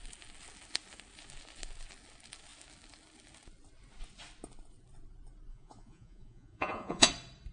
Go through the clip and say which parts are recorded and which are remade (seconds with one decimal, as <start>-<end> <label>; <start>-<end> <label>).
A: 0.0-5.5 recorded; 5.5-7.1 remade; 7.1-7.5 recorded